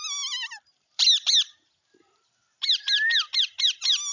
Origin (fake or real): real